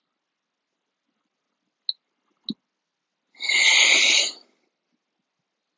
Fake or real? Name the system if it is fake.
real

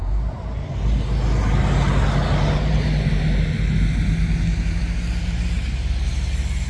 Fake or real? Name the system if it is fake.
real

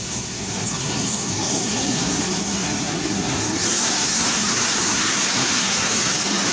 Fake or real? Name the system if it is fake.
fake, codec, SNAC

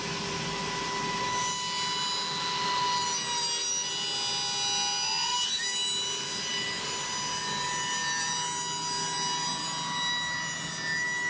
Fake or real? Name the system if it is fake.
real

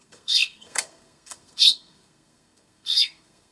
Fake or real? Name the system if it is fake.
fake, codec, SNAC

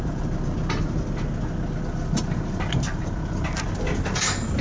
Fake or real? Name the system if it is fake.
real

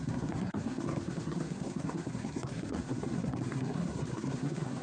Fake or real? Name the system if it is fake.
fake, codec, SNAC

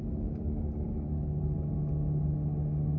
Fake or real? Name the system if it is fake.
real